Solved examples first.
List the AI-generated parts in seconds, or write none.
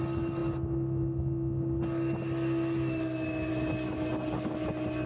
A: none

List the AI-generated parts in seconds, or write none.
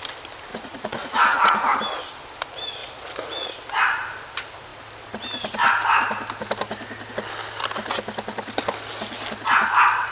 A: 0.5-1.8; 2.8-3.5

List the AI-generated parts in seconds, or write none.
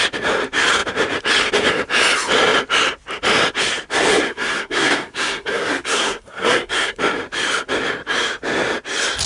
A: 4.1-7.0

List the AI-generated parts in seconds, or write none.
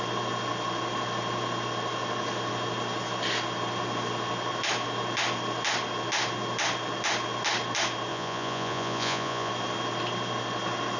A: 8.1-9.5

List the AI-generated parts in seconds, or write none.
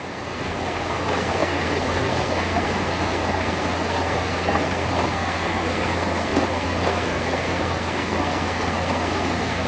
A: 0.0-9.7